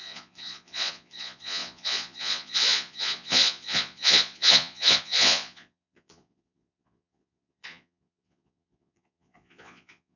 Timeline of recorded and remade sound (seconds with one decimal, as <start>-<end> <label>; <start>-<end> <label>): 0.0-10.2 remade